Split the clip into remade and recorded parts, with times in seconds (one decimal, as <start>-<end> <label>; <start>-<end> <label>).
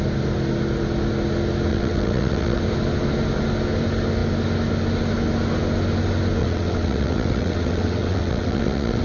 0.0-1.7 recorded; 1.7-2.6 remade; 2.6-6.4 recorded; 6.4-9.0 remade